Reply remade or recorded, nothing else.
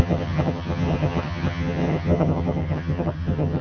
remade